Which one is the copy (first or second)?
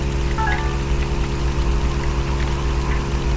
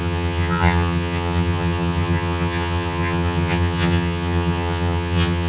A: second